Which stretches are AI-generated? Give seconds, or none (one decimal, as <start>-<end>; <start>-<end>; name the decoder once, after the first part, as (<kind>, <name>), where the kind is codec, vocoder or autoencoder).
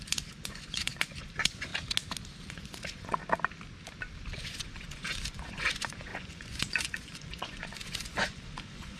0.0-1.7 (vocoder, Vocos); 2.5-3.2; 4.4-9.0